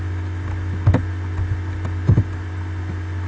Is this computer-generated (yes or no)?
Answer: no